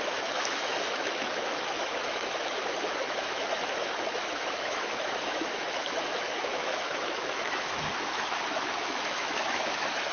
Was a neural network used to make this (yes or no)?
yes